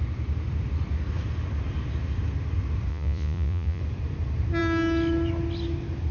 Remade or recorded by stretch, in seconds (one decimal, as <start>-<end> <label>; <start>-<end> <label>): 0.0-2.9 recorded; 2.9-3.8 remade; 3.8-6.1 recorded